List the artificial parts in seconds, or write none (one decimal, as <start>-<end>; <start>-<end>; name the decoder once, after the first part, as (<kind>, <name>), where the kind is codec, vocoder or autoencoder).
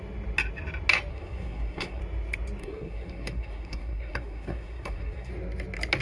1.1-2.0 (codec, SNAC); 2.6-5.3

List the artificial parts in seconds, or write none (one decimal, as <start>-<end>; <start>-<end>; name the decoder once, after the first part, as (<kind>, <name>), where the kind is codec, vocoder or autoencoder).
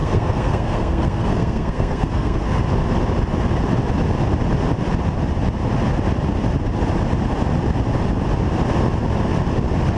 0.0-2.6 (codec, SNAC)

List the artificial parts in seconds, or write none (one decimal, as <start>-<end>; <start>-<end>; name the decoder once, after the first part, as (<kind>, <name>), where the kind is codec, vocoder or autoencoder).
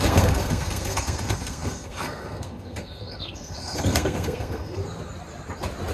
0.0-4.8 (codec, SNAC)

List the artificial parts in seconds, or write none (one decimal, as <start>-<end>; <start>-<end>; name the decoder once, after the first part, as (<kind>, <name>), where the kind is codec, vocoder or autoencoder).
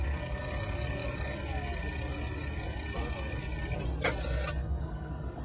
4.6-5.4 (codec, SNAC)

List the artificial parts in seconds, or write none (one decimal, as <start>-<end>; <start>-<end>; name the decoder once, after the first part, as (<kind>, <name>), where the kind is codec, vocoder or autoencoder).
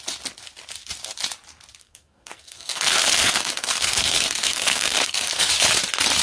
1.8-5.5 (codec, SNAC)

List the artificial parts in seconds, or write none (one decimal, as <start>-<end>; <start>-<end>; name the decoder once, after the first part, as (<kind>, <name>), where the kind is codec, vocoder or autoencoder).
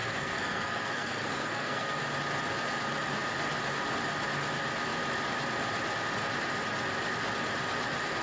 0.0-2.0 (codec, SNAC)